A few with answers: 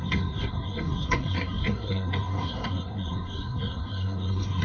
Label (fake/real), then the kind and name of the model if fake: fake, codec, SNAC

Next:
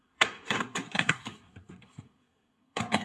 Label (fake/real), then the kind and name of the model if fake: fake, codec, SNAC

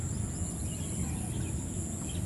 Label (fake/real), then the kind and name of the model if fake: real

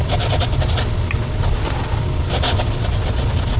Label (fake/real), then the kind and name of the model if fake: real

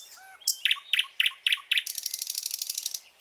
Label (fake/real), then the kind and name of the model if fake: real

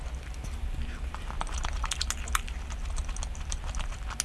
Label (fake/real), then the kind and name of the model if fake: real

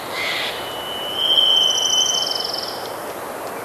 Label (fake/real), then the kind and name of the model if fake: real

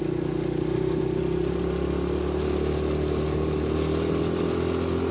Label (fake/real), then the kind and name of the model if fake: real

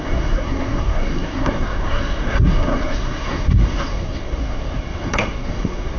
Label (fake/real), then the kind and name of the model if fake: fake, codec, SNAC